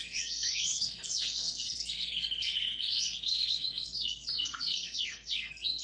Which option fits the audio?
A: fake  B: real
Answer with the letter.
A